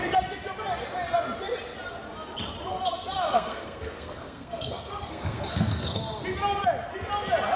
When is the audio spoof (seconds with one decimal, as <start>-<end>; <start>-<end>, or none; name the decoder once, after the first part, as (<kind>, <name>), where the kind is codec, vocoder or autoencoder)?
2.7-6.0 (codec, SNAC)